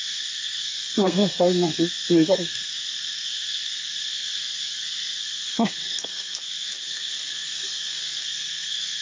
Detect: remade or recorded remade